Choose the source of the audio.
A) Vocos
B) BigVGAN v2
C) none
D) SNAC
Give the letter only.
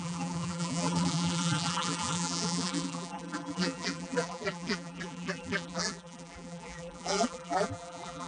B